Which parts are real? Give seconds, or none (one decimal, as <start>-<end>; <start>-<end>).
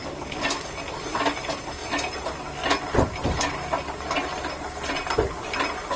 0.0-6.0